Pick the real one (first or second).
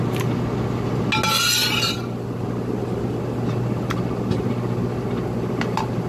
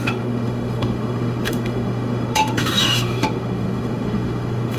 first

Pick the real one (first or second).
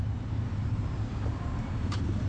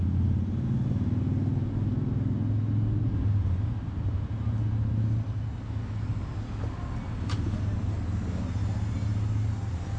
second